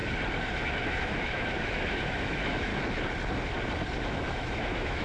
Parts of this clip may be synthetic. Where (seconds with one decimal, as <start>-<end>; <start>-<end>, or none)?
0.6-2.7; 4.0-5.0